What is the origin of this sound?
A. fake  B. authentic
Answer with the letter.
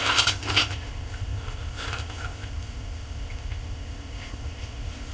A